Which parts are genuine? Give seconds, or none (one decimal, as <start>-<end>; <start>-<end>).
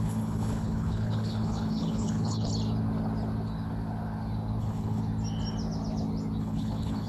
2.5-4.6; 5.0-6.4